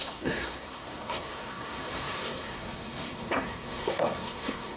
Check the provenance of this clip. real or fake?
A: fake